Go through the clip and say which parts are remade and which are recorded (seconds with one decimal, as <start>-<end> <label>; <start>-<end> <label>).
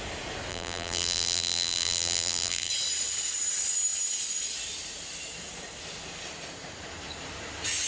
0.0-0.5 recorded; 0.5-2.7 remade; 2.7-7.9 recorded